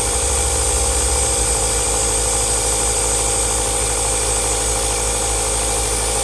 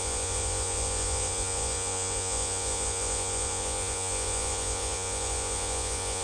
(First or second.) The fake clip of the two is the second